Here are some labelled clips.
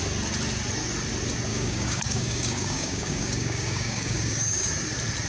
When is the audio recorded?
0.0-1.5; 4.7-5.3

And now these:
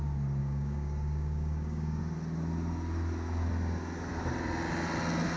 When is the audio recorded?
0.0-0.4; 2.0-5.4

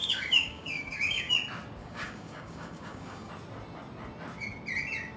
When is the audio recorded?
1.3-1.8; 3.3-5.2

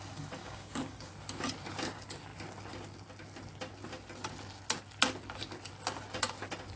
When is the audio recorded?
0.0-0.4; 1.1-6.8

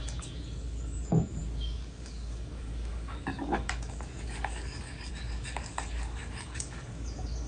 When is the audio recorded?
none

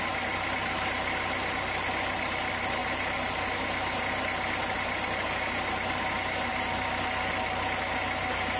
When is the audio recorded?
0.0-8.6

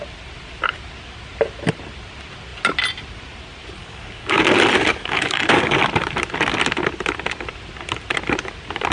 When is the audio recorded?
0.0-3.8; 4.4-4.9; 5.8-8.9

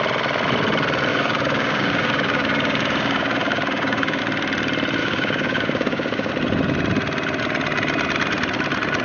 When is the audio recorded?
0.0-1.1; 4.2-5.0; 6.3-9.0